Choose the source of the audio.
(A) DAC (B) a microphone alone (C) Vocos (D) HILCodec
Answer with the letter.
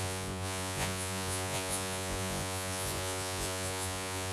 C